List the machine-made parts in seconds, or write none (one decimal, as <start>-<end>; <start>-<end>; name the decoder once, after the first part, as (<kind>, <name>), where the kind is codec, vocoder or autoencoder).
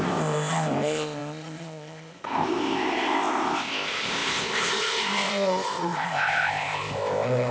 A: 0.0-7.5 (codec, ZipCodec)